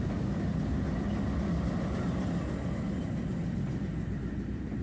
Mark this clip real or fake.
real